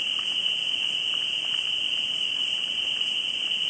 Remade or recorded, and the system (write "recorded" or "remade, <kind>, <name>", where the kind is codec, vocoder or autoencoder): recorded